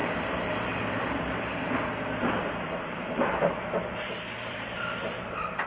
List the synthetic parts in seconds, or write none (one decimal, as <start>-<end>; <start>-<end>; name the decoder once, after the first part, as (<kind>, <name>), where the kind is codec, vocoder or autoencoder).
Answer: 0.0-1.5 (vocoder, BigVGAN v2); 2.2-5.7